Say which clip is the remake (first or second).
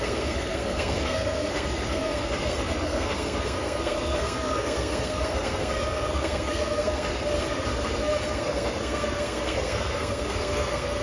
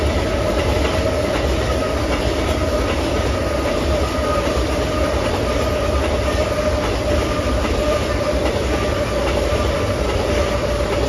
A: first